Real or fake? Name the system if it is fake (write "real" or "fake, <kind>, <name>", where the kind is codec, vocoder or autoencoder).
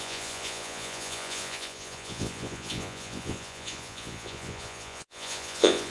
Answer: fake, vocoder, Vocos